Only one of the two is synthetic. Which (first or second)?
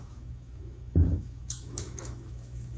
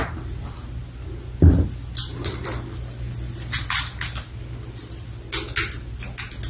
first